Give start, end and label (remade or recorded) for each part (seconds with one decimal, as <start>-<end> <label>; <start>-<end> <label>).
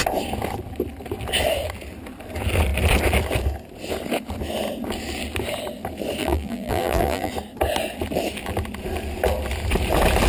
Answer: 0.0-6.2 recorded; 6.2-7.3 remade; 7.3-10.3 recorded